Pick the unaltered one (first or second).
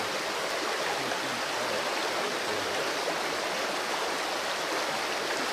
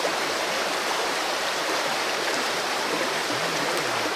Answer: first